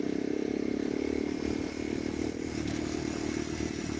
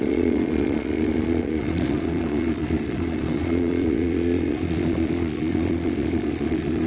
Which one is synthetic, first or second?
second